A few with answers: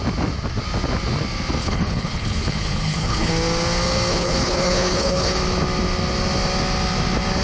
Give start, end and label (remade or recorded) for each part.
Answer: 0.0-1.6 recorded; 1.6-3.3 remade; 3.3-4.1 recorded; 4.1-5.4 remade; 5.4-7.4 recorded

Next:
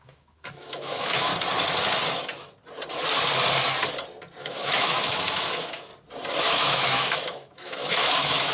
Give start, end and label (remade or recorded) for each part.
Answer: 0.0-1.3 remade; 1.3-4.4 recorded; 4.4-5.9 remade; 5.9-6.4 recorded; 6.4-8.5 remade